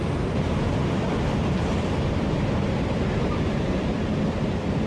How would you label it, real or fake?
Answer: real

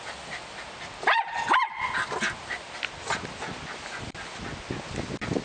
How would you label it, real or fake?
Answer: real